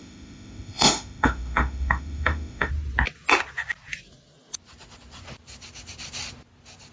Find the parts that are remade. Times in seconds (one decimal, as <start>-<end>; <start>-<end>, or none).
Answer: 0.0-2.7